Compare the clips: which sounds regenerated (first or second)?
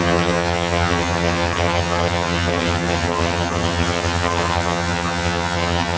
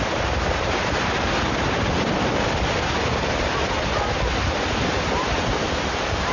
first